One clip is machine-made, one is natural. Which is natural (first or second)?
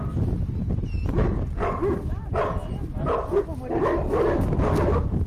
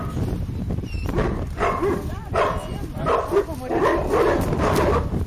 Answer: first